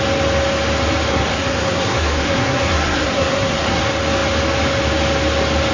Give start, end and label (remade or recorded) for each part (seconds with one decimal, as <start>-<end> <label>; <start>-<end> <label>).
0.0-1.1 recorded; 1.1-3.8 remade; 3.8-5.7 recorded